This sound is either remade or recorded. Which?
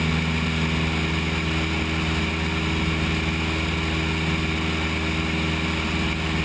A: recorded